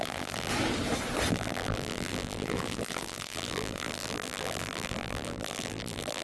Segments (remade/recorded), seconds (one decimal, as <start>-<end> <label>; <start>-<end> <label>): 0.0-0.5 remade; 0.5-1.3 recorded; 1.3-6.2 remade